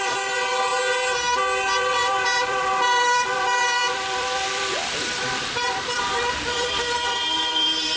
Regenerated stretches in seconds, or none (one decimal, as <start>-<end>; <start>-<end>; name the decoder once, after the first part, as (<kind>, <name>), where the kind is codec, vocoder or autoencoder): 0.0-0.7 (vocoder, BigVGAN v2); 1.8-8.0